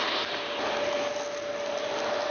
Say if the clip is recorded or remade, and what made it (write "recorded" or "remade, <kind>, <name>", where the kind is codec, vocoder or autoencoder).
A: recorded